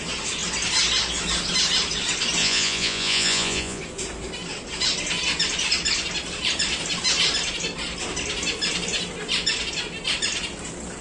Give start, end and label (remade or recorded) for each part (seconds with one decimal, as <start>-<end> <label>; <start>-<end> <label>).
0.0-2.4 recorded; 2.4-3.8 remade; 3.8-11.0 recorded